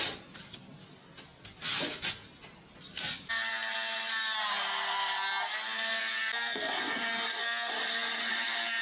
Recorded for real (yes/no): yes